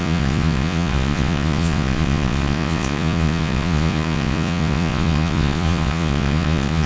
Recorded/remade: remade